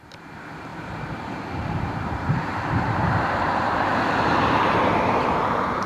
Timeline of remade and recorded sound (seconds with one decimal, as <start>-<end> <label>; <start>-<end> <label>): 0.0-5.9 remade